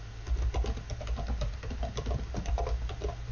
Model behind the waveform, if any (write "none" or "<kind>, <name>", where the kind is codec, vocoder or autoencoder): none